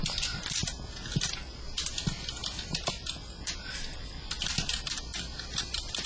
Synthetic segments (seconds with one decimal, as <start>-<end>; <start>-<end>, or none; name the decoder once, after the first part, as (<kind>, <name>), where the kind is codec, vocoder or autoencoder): 2.4-4.3 (vocoder, BigVGAN v2)